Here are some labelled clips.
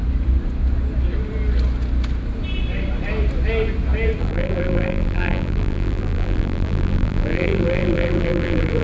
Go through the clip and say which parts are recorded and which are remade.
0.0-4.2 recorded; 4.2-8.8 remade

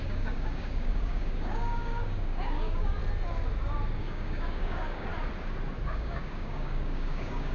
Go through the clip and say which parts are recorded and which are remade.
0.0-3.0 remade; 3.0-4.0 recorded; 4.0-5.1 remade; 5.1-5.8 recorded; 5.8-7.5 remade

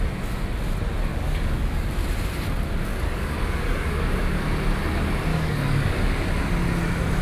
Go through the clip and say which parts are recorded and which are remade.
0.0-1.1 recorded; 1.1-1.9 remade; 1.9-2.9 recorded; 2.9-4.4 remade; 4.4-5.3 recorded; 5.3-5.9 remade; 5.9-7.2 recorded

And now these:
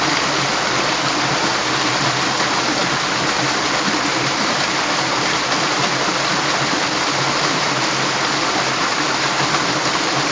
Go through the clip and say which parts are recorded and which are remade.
0.0-10.3 recorded

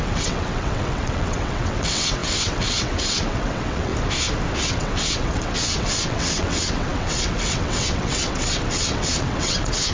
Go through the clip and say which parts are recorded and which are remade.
0.0-3.9 remade; 3.9-4.6 recorded; 4.6-9.9 remade

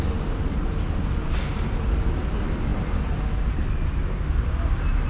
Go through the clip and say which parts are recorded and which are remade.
0.0-5.1 recorded

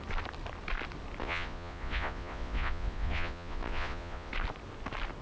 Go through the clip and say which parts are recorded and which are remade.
0.0-1.2 recorded; 1.2-4.3 remade; 4.3-5.2 recorded

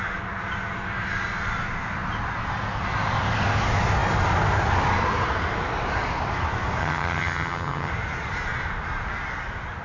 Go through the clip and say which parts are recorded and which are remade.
0.0-6.8 recorded; 6.8-7.9 remade; 7.9-9.8 recorded